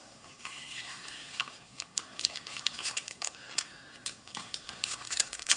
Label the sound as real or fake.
fake